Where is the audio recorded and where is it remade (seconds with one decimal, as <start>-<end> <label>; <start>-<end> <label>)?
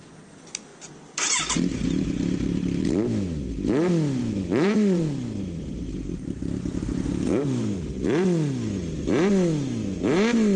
0.0-4.2 recorded; 4.2-7.8 remade; 7.8-10.6 recorded